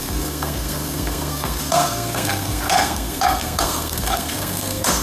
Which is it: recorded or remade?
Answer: remade